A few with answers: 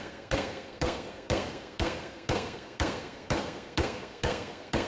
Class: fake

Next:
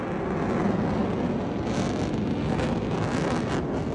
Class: real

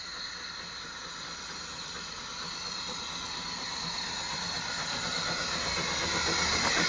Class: real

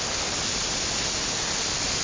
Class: real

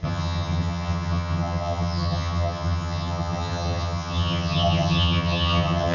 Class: fake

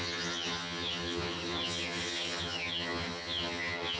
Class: fake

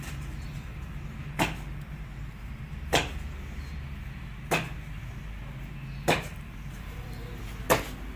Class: real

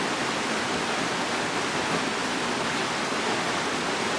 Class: real